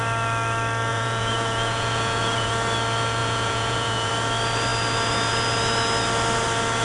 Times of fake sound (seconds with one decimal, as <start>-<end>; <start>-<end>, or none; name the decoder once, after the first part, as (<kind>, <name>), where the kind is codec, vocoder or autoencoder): 0.9-2.5 (vocoder, Vocos); 3.2-4.1

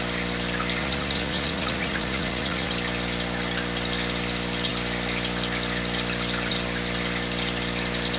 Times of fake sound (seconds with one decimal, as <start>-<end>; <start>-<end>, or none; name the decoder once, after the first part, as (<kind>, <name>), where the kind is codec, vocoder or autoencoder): 0.8-2.7 (vocoder, Vocos)

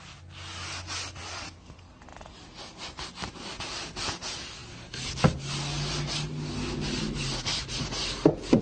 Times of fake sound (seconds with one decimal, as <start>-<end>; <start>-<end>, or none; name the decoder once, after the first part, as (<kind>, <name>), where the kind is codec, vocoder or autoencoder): none

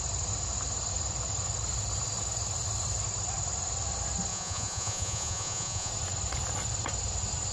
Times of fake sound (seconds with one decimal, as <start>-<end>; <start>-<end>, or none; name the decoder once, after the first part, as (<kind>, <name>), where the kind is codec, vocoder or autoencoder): 4.3-5.9 (vocoder, Vocos)

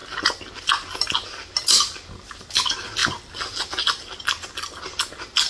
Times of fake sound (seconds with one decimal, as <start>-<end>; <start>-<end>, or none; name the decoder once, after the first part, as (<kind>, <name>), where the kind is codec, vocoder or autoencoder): none